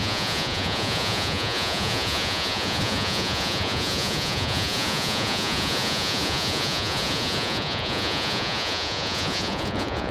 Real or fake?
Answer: fake